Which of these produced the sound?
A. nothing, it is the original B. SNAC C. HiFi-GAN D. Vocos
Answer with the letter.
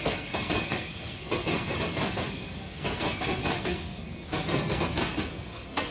B